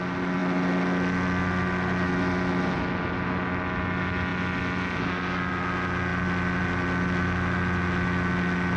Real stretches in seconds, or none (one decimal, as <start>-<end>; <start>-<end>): 0.0-8.8